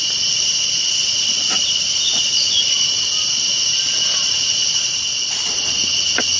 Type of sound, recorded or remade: recorded